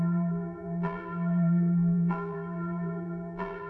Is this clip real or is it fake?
fake